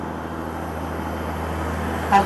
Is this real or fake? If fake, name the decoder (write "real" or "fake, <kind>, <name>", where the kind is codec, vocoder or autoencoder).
real